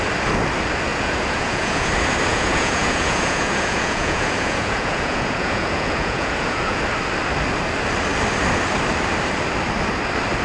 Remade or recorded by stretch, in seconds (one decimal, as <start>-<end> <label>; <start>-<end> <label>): 0.0-0.9 recorded; 0.9-1.9 remade; 1.9-2.3 recorded; 2.3-6.8 remade; 6.8-10.4 recorded

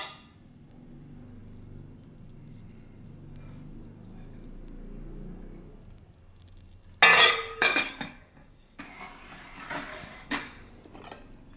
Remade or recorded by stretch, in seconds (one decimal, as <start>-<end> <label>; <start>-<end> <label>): 0.0-7.1 recorded; 7.1-8.8 remade; 8.8-9.9 recorded; 9.9-10.7 remade; 10.7-11.6 recorded

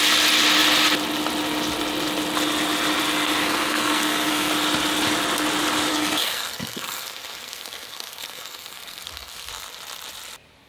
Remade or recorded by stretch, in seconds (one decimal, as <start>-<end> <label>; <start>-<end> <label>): 0.0-3.4 recorded; 3.4-4.5 remade; 4.5-5.9 recorded; 5.9-9.5 remade; 9.5-10.7 recorded

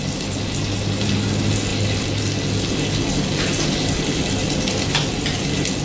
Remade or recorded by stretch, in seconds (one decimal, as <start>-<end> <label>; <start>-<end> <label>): 0.0-5.8 recorded